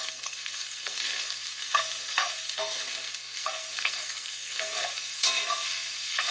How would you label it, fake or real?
fake